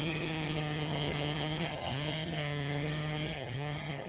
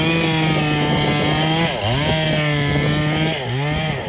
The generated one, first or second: first